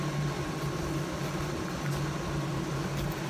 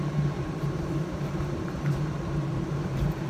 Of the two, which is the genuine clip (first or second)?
first